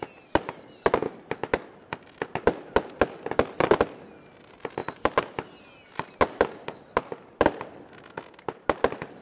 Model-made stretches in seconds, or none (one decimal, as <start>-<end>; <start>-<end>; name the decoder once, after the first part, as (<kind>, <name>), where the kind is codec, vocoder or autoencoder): none